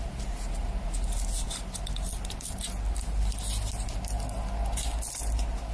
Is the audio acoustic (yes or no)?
yes